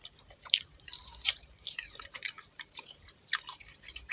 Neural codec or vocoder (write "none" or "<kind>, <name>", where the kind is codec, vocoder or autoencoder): vocoder, BigVGAN v2